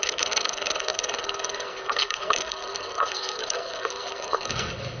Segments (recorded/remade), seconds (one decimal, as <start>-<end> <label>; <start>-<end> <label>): 0.0-5.0 remade